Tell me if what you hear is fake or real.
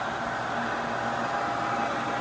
real